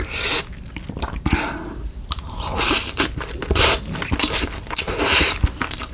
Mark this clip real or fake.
fake